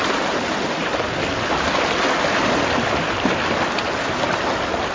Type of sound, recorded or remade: recorded